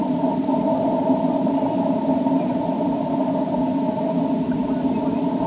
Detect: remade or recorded recorded